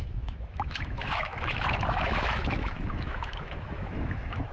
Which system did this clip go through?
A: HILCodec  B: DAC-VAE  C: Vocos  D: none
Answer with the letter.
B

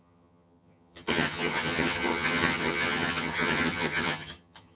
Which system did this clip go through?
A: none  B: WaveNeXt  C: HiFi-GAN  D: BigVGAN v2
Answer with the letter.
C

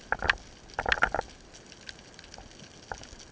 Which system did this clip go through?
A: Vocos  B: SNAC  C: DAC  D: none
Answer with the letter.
D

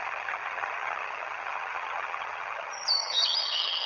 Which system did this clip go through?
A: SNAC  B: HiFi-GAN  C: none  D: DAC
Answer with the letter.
B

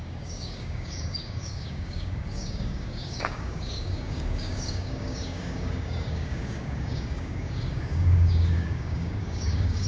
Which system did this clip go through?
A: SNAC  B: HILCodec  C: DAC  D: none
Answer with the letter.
C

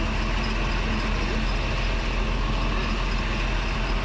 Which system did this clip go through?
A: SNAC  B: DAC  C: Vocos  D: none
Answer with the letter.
D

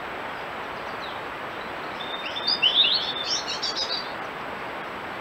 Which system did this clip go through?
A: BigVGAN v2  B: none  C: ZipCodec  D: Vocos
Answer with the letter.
B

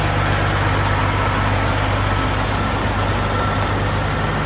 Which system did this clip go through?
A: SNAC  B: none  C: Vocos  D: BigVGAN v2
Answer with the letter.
B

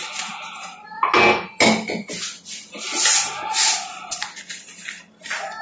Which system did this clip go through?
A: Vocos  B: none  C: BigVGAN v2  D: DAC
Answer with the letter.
B